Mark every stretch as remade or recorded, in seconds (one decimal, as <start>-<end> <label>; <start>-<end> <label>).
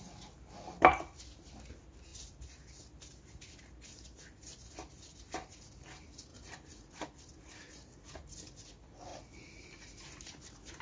0.0-10.8 recorded